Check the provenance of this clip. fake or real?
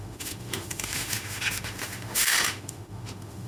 fake